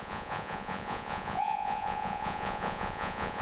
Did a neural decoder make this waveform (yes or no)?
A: yes